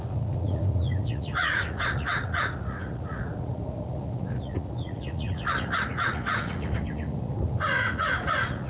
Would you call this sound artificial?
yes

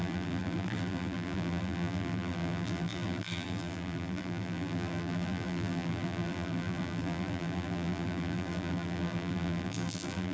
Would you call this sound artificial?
yes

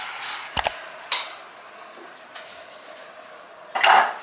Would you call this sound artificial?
no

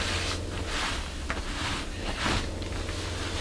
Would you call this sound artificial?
no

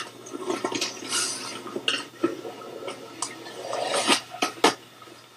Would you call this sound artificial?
no